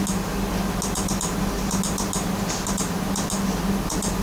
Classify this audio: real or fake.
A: real